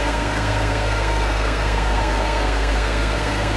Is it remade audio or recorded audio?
remade